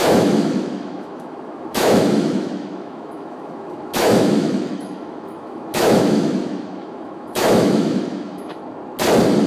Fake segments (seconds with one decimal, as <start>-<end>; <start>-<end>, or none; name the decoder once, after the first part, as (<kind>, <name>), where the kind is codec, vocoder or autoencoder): 0.0-8.6 (autoencoder, DAC-VAE)